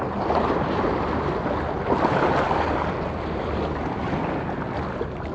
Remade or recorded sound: recorded